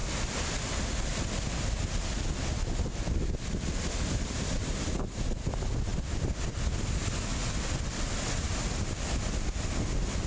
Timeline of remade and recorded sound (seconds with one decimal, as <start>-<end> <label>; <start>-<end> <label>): 0.0-10.3 recorded